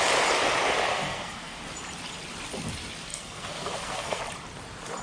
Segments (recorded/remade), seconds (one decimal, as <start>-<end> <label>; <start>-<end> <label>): 0.0-0.9 recorded; 0.9-1.6 remade; 1.6-3.1 recorded; 3.1-4.2 remade; 4.2-5.0 recorded